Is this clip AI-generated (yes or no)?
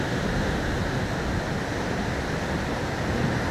no